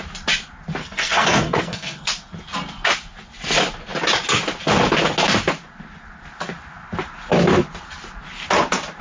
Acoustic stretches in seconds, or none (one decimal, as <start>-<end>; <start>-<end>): 0.0-0.8; 2.1-9.0